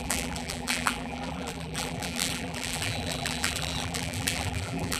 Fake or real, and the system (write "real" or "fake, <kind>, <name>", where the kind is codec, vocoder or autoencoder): fake, vocoder, BigVGAN v2